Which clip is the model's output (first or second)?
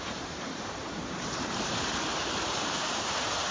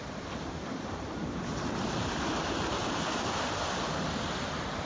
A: first